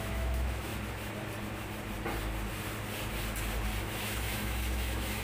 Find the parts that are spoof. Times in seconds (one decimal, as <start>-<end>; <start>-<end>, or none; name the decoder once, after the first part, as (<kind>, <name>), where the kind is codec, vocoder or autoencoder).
0.0-0.7 (autoencoder, DAC-VAE); 3.8-5.2